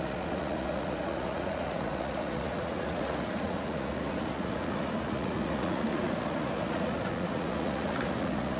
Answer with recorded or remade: remade